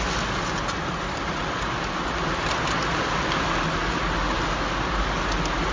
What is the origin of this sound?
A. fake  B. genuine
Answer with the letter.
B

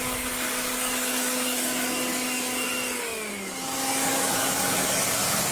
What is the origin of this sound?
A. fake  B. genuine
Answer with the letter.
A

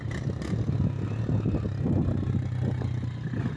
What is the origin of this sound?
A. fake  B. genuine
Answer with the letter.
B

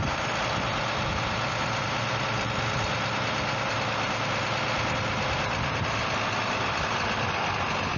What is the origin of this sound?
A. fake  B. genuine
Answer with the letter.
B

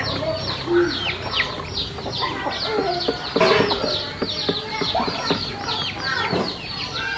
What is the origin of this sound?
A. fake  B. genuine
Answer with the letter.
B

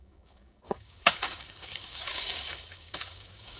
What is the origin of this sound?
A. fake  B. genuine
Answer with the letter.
A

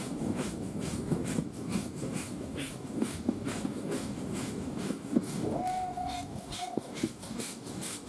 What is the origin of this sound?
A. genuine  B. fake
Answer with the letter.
B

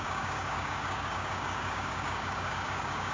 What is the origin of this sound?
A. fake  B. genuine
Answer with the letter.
A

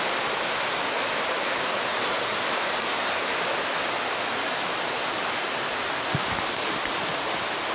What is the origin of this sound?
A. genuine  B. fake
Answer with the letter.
A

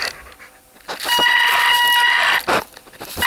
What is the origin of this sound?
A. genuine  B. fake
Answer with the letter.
A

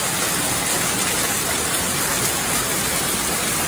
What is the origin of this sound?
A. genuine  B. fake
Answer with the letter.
A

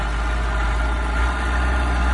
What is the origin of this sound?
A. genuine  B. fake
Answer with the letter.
A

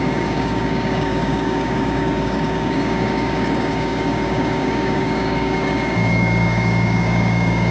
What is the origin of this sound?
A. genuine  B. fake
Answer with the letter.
B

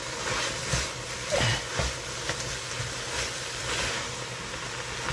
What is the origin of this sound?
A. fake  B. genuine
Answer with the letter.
B